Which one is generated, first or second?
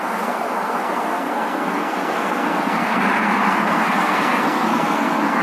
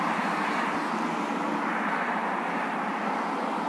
first